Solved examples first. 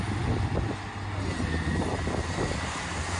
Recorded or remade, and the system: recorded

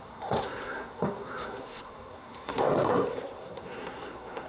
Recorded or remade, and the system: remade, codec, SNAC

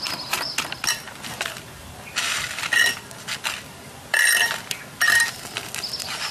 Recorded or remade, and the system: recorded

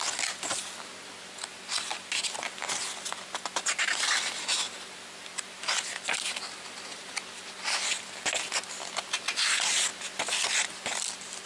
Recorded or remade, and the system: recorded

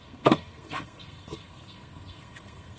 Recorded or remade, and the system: remade, codec, SNAC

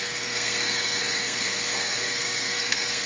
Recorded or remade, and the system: remade, codec, SNAC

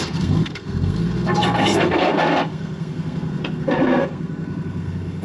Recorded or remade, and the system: remade, codec, SNAC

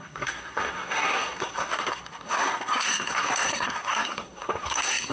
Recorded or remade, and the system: remade, codec, SNAC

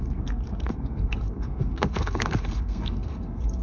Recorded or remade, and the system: remade, codec, SNAC